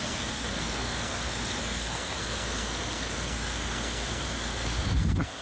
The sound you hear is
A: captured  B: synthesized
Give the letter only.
B